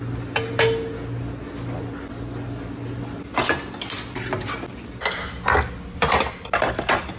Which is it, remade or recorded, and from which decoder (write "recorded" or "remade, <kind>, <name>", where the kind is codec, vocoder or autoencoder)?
recorded